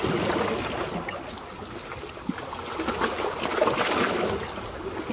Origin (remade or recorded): recorded